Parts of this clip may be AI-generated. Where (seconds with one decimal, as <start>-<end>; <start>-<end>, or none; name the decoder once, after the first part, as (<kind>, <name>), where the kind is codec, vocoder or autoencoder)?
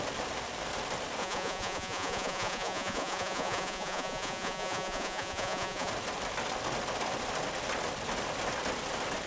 1.2-5.9 (vocoder, Vocos)